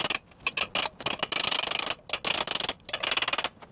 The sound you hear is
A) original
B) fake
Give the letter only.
A